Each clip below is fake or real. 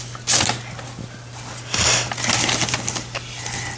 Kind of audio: real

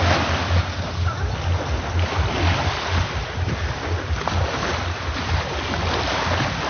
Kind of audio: real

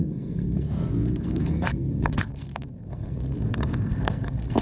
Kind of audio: fake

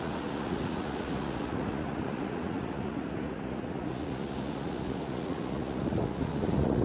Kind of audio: fake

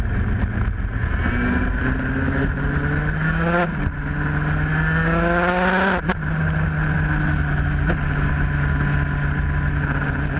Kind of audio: real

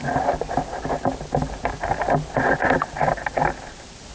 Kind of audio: real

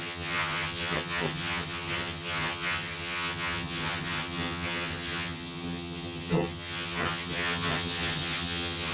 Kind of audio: fake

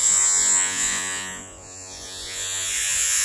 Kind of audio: fake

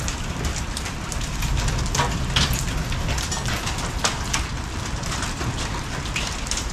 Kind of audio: real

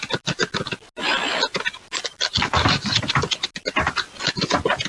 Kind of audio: real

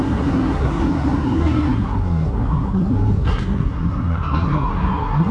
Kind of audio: fake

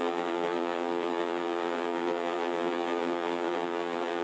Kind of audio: fake